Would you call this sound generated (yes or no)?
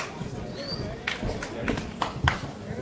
no